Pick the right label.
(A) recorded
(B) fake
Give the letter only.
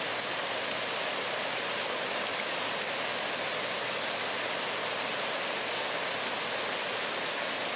A